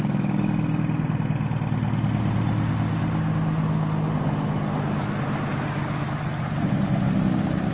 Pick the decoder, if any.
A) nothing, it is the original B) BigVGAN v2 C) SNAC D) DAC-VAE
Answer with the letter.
A